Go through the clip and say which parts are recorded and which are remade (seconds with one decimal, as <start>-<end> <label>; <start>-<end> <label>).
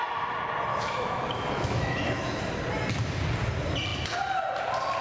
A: 0.0-0.7 recorded; 0.7-2.4 remade; 2.4-5.0 recorded